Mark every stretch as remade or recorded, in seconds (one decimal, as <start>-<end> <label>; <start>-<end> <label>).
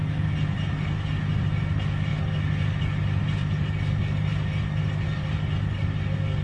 0.0-6.4 recorded